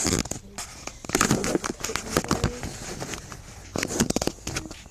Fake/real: real